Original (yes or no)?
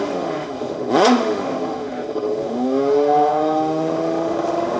no